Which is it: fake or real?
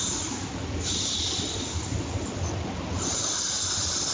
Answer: real